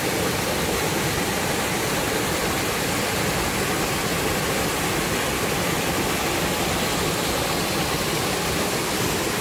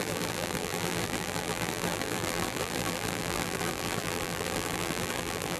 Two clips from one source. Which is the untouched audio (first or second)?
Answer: first